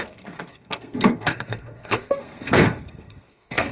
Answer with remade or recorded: remade